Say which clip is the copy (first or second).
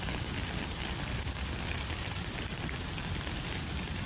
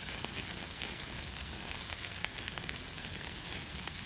second